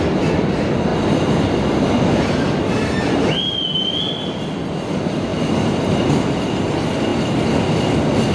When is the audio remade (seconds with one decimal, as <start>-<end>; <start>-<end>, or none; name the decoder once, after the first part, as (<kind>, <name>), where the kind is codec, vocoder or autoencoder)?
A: none